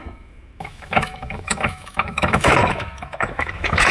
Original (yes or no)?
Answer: no